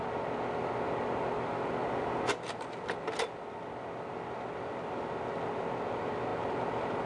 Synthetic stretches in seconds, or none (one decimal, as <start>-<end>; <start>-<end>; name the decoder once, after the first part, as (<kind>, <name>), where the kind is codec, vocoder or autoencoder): none